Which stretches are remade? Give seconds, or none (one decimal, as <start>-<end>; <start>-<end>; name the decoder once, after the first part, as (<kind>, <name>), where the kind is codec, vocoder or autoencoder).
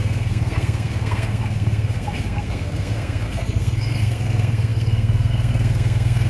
0.0-6.3 (codec, SNAC)